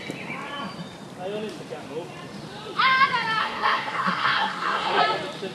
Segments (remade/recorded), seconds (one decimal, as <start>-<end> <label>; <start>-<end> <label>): 0.0-3.4 recorded; 3.4-5.0 remade; 5.0-5.5 recorded